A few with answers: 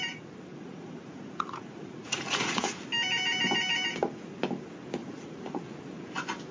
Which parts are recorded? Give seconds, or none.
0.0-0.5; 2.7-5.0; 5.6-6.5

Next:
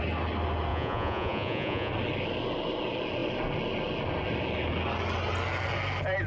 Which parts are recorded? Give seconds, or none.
0.0-0.7; 1.9-6.3